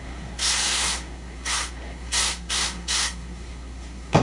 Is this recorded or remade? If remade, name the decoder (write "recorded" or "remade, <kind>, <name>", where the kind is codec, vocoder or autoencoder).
remade, codec, SNAC